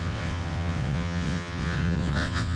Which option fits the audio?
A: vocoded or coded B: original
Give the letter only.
A